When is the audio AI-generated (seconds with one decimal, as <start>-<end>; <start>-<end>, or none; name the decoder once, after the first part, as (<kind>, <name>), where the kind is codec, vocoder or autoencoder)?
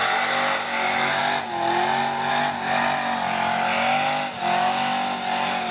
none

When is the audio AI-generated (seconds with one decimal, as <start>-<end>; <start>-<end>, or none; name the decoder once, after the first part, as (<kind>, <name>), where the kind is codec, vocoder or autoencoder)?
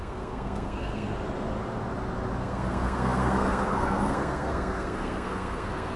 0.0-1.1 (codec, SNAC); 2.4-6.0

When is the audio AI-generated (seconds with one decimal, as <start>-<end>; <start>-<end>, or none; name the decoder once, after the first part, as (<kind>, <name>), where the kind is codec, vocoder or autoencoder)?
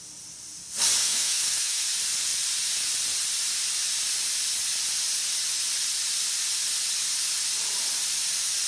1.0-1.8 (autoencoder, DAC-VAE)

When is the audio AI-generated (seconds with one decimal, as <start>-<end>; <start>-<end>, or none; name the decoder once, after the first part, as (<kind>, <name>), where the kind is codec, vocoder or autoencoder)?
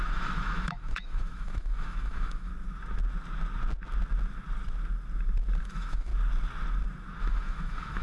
0.0-2.5 (autoencoder, DAC-VAE); 5.6-6.1; 7.2-8.0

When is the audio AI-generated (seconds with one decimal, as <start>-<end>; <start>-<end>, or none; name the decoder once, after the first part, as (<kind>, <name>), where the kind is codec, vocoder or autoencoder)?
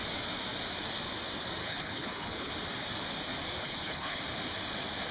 1.6-2.5 (codec, HILCodec); 3.6-4.2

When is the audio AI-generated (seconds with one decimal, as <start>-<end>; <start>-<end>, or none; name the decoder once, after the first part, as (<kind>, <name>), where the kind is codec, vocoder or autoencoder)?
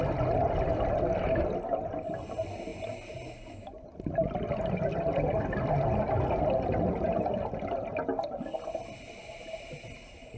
none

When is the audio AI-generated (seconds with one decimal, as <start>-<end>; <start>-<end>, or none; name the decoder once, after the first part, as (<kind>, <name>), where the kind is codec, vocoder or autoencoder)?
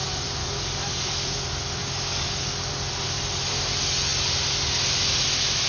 0.4-1.1 (codec, DAC); 1.8-2.7